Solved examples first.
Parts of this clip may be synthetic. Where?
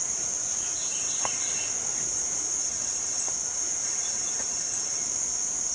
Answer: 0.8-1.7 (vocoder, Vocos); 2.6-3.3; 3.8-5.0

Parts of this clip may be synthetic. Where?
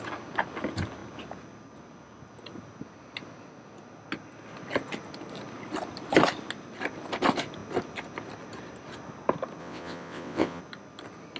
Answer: 9.6-10.6 (vocoder, WaveNeXt)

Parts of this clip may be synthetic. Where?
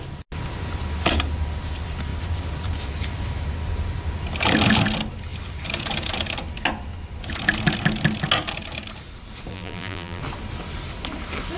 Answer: 9.5-10.2 (vocoder, BigVGAN v2)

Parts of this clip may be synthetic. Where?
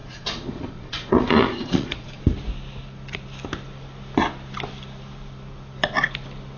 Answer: 0.0-2.2 (vocoder, Vocos)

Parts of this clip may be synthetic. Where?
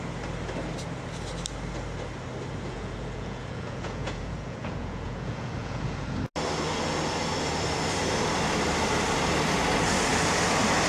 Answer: 2.7-6.2 (vocoder, Vocos)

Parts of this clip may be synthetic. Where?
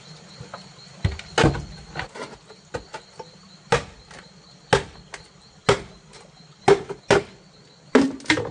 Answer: none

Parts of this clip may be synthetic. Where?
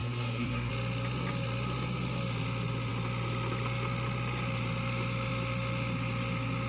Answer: 0.0-0.7 (codec, SNAC)